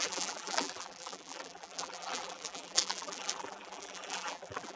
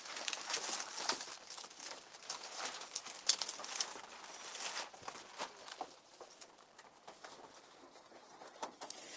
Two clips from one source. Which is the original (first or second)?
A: second